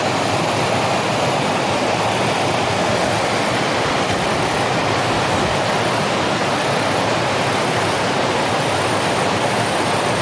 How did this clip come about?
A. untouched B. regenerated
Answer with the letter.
A